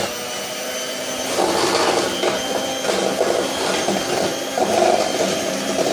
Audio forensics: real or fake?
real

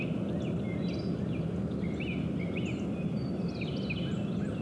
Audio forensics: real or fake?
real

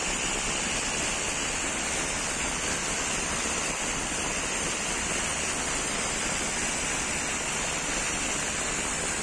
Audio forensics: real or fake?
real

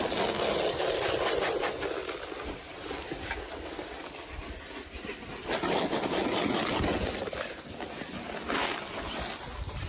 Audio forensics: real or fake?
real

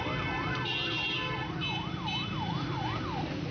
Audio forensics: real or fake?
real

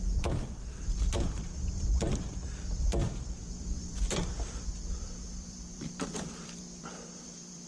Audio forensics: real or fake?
fake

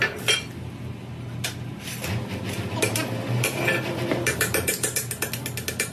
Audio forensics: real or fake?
real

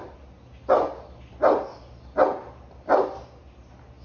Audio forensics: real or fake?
real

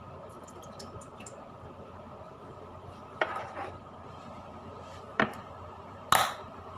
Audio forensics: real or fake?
fake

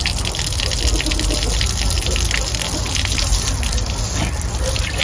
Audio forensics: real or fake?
real